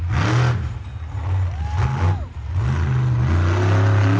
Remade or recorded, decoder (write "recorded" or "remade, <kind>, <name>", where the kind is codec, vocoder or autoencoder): recorded